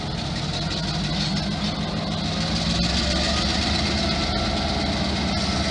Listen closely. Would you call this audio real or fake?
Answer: real